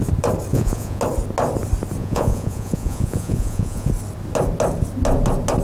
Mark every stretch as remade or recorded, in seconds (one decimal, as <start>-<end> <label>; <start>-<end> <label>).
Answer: 0.0-0.5 recorded; 0.5-1.0 remade; 1.0-2.0 recorded; 2.0-3.9 remade; 3.9-5.6 recorded